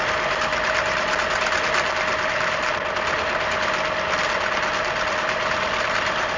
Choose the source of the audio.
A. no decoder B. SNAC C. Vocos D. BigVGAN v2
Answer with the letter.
A